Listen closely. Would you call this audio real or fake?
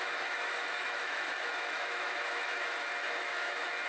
fake